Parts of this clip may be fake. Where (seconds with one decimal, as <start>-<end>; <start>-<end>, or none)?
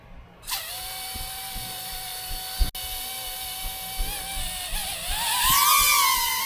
none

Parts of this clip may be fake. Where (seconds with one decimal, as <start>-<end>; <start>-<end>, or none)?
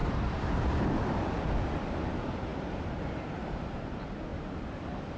0.0-1.9; 2.5-3.6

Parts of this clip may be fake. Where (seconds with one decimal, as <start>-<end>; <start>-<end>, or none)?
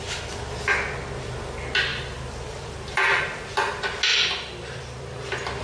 1.9-3.2; 4.1-5.6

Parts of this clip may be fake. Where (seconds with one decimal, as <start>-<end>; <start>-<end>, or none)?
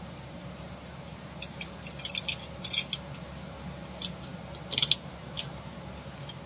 none